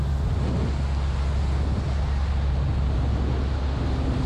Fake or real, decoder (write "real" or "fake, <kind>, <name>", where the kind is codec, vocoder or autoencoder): real